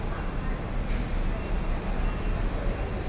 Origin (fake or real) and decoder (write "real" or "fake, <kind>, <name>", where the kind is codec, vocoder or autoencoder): real